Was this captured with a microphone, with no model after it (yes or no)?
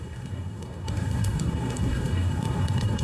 no